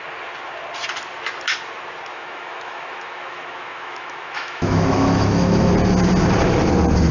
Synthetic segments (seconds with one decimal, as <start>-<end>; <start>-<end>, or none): 2.1-5.7